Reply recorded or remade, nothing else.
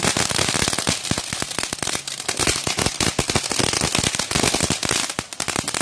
recorded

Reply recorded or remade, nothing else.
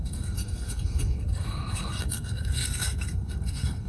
remade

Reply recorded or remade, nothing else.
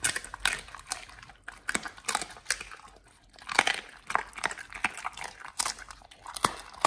recorded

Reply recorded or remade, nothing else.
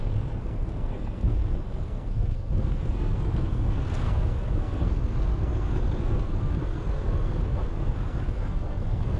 remade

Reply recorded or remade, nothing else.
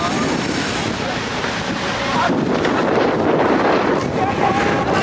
recorded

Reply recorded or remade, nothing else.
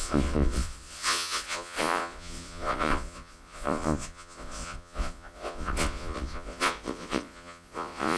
remade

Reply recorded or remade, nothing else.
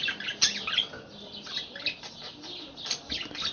recorded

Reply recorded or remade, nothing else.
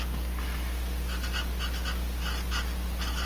recorded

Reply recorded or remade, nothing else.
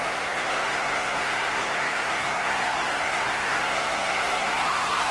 remade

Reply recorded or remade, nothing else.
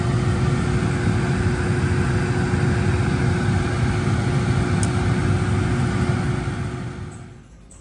recorded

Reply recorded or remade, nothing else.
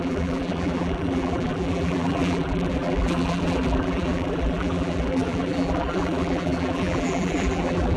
remade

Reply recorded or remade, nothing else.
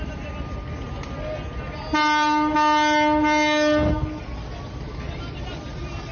recorded